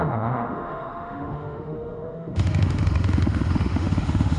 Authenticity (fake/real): fake